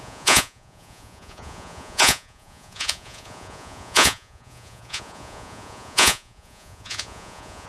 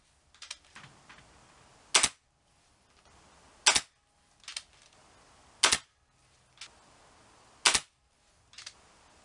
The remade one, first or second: first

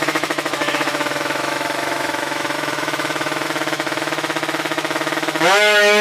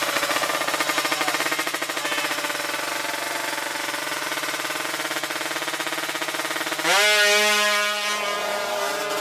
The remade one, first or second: first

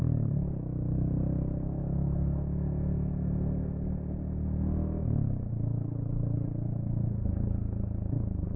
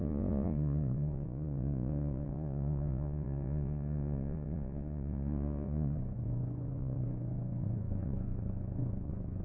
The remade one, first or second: second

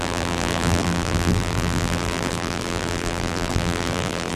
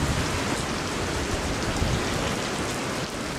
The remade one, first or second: first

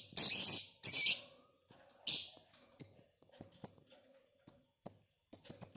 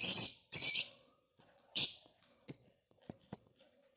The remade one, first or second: second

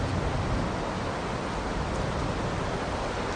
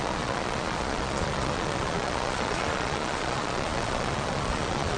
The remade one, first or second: second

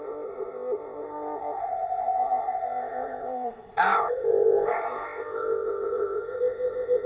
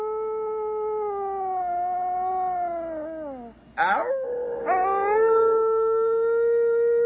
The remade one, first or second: first